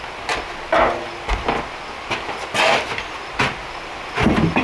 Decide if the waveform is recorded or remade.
recorded